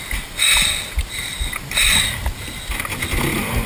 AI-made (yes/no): no